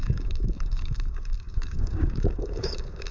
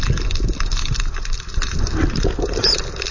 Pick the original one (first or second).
second